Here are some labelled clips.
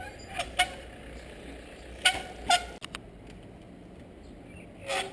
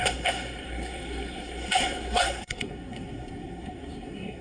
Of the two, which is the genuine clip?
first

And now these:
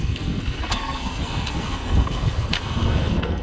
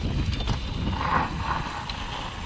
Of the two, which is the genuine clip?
second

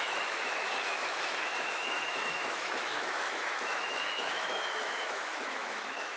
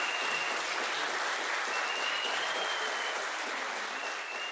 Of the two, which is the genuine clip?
second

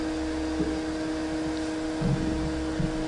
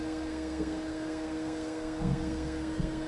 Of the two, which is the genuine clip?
first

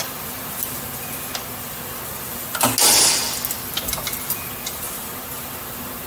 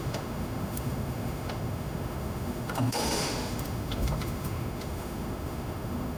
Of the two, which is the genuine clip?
first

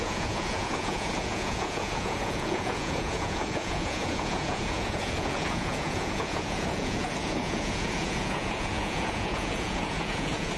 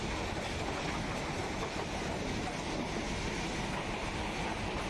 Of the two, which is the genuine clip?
second